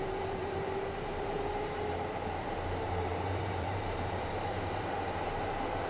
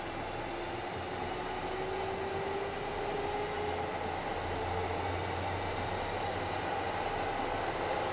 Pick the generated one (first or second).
first